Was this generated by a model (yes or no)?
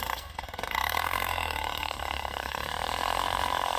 yes